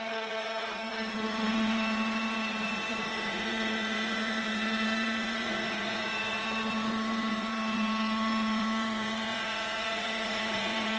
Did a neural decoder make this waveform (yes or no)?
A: yes